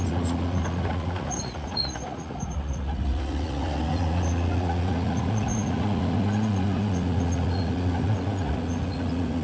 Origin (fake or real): fake